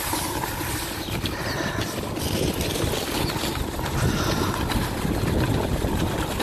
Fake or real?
real